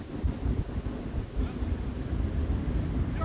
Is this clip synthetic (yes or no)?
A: no